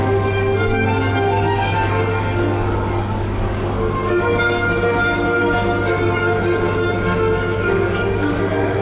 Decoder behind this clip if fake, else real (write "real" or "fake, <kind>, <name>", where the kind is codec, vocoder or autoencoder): fake, codec, DAC